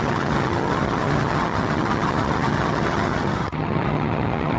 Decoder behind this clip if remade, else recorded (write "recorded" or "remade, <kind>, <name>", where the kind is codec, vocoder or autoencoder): remade, vocoder, HiFi-GAN